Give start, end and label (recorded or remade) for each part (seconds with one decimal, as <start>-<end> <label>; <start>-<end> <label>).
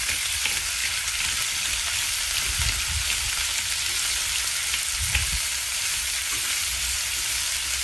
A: 0.0-5.2 recorded; 5.2-6.8 remade; 6.8-7.8 recorded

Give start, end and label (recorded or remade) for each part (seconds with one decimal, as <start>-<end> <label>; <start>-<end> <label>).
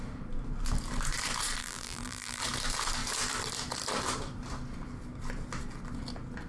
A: 0.0-1.6 recorded; 1.6-2.4 remade; 2.4-6.5 recorded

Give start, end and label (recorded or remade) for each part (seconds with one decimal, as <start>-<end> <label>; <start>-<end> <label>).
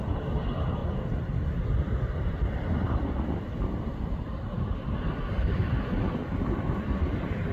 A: 0.0-0.8 recorded; 0.8-5.3 remade; 5.3-7.5 recorded